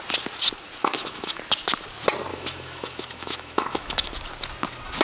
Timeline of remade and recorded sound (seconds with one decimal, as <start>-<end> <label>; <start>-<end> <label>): 0.0-0.8 recorded; 0.8-1.4 remade; 1.4-2.3 recorded; 2.3-4.1 remade; 4.1-5.0 recorded